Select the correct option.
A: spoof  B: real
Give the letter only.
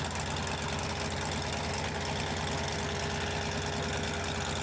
B